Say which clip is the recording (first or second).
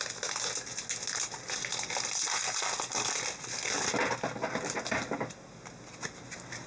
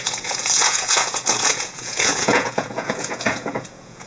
first